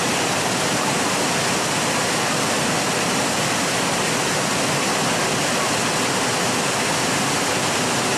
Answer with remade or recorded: recorded